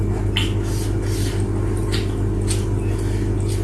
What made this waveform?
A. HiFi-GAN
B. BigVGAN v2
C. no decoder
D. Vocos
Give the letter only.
C